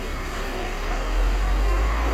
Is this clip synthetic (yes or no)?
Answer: yes